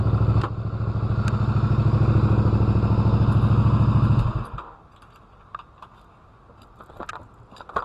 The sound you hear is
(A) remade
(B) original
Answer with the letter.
B